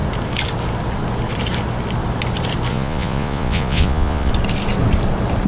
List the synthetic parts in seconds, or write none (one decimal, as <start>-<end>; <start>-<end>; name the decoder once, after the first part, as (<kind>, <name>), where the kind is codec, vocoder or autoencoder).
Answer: 2.7-4.3 (vocoder, Vocos)